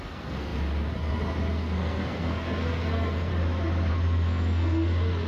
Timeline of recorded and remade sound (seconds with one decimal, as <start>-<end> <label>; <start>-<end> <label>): 0.0-3.3 remade; 3.3-3.9 recorded; 3.9-5.3 remade